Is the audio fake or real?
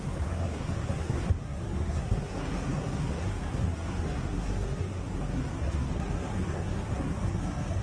fake